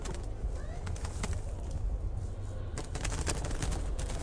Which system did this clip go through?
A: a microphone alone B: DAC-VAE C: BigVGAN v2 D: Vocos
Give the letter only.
A